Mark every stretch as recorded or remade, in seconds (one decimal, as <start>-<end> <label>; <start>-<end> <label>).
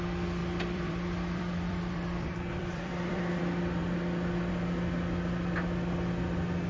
0.0-0.4 recorded; 0.4-3.4 remade; 3.4-6.7 recorded